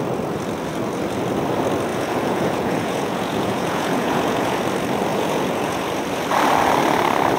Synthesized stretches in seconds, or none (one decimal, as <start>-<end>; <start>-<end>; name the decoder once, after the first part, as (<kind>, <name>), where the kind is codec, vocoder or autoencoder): 1.9-4.6 (vocoder, Vocos); 5.1-5.8